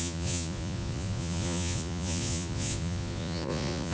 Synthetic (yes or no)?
yes